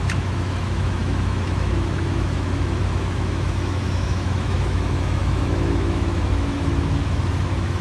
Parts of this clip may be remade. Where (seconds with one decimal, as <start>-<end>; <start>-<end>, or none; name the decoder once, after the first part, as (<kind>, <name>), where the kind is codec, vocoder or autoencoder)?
0.0-7.8 (autoencoder, DAC-VAE)